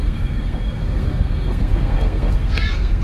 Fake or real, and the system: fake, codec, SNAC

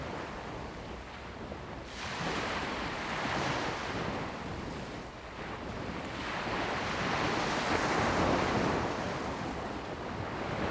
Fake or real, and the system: real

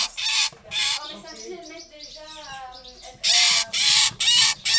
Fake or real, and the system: real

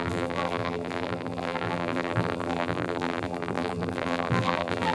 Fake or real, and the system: fake, vocoder, BigVGAN v2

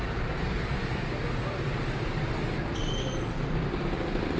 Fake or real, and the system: real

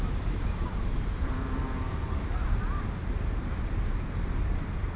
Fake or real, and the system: fake, vocoder, BigVGAN v2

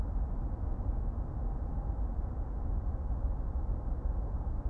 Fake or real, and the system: real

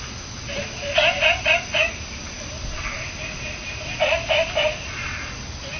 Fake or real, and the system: real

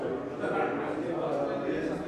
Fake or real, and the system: real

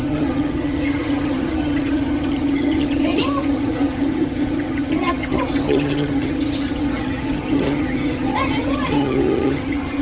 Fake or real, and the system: fake, vocoder, HiFi-GAN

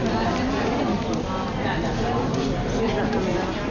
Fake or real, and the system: real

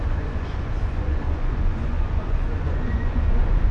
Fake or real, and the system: fake, vocoder, Vocos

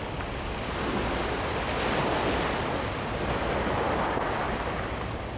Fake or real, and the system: real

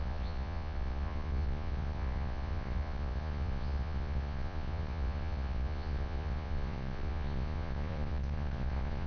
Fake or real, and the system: fake, vocoder, Vocos